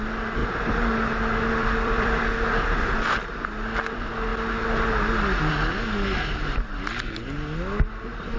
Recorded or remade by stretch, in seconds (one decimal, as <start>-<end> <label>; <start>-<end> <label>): 0.0-1.6 recorded; 1.6-2.2 remade; 2.2-8.4 recorded